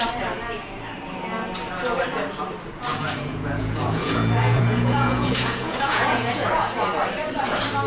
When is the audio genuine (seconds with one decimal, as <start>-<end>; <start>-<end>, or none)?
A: 0.0-2.9; 6.8-7.9